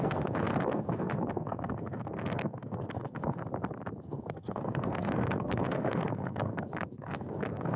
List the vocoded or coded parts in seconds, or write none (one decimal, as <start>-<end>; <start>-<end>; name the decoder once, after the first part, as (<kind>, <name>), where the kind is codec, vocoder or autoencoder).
0.0-3.4 (codec, SNAC); 4.0-7.8